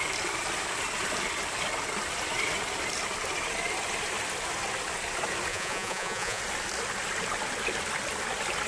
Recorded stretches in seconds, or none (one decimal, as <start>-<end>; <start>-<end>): 0.0-5.5; 6.4-8.7